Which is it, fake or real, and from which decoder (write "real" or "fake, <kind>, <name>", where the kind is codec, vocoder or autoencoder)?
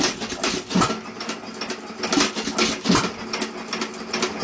real